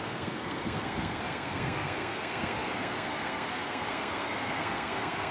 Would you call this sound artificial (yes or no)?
yes